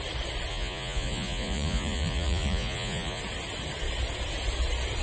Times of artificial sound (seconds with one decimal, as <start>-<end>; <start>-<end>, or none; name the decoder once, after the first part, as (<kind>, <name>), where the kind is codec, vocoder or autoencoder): 0.5-3.2 (vocoder, Vocos)